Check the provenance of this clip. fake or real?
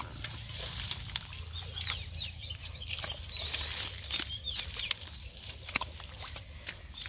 real